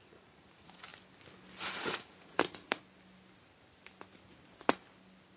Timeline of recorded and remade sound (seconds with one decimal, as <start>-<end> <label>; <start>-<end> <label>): 0.0-0.9 remade; 0.9-1.7 recorded; 1.7-2.8 remade; 2.8-5.4 recorded